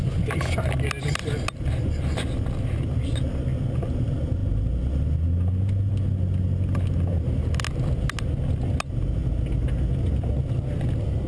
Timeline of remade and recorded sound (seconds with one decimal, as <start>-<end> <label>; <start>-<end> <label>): 0.0-11.3 recorded